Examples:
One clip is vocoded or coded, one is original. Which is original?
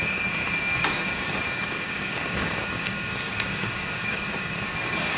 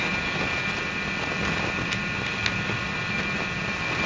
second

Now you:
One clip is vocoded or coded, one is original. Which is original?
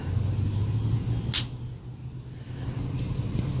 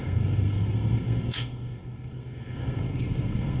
first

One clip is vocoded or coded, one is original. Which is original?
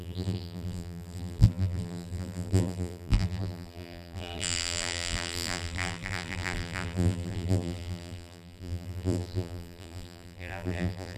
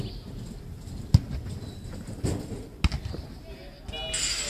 second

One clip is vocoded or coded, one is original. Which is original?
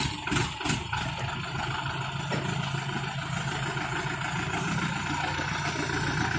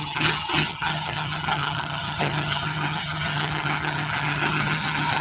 first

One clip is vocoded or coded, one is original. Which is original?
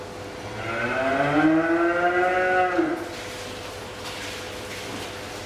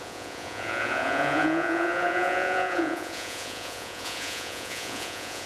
first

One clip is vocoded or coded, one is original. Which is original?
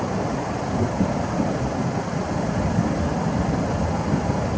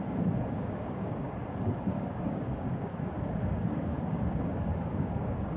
first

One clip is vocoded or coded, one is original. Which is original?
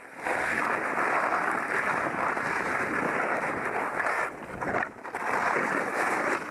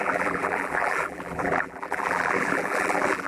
first